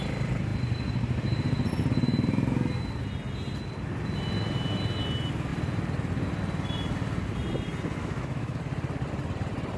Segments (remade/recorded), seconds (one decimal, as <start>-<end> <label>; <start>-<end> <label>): 0.0-8.0 recorded; 8.0-8.6 remade; 8.6-9.8 recorded